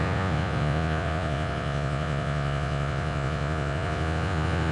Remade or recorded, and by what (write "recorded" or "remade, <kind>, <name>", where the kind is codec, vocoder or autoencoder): remade, vocoder, Vocos